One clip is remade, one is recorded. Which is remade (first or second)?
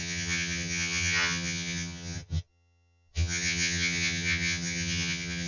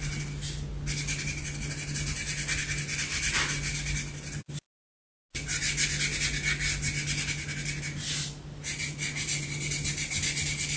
first